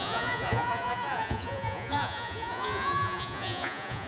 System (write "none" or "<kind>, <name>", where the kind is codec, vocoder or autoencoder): vocoder, Vocos